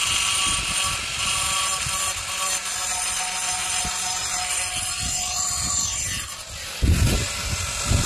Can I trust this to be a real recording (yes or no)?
yes